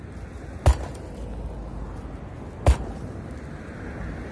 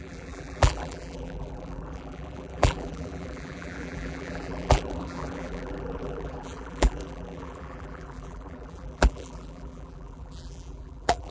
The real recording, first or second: first